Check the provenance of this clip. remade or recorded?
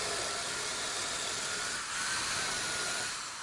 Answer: remade